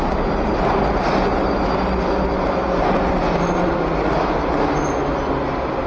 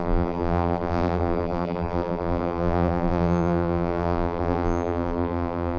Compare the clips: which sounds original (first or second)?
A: first